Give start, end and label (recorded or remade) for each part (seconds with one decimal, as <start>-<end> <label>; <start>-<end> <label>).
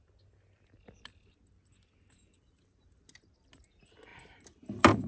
0.0-5.1 recorded